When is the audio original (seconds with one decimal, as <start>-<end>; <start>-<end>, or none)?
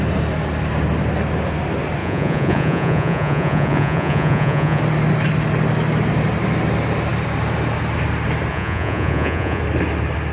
0.0-2.0; 4.8-8.5; 9.6-10.3